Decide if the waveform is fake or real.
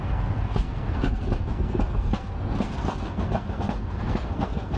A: fake